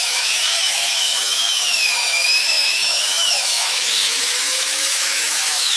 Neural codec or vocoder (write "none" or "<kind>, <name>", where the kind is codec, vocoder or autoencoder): autoencoder, DAC-VAE